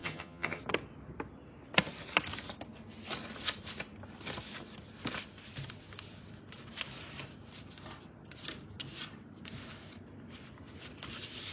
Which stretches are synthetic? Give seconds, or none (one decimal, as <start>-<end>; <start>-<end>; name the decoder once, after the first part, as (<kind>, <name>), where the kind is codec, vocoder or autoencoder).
0.0-0.6 (vocoder, HiFi-GAN)